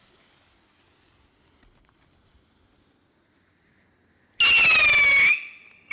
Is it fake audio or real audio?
real